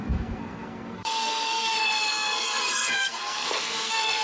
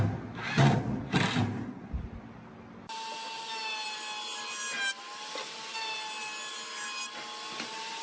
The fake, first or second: first